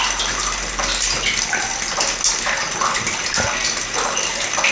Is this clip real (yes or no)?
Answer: yes